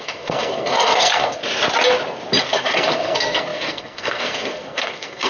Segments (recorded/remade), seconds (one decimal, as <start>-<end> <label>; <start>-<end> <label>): 0.0-1.4 remade; 1.4-2.4 recorded; 2.4-5.3 remade